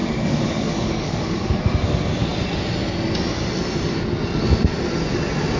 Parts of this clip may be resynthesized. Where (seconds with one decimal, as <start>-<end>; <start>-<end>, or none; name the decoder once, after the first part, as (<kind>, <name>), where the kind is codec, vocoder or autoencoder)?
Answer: 0.0-1.7 (codec, DAC)